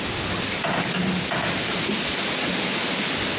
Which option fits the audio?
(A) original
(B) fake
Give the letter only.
A